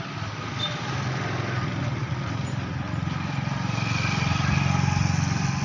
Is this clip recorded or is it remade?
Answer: recorded